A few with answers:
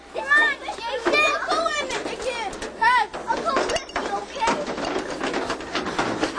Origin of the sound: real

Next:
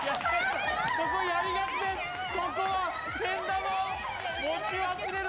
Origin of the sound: real